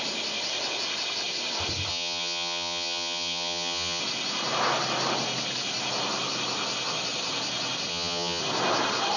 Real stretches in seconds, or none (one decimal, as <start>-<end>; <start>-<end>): 0.0-1.9; 4.0-7.9; 8.4-9.2